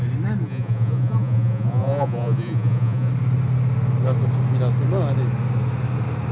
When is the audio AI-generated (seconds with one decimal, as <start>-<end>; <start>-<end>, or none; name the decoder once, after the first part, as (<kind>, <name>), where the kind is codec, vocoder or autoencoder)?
0.4-3.1 (vocoder, Vocos)